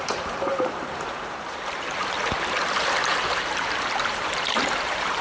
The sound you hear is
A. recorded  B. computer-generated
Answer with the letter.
B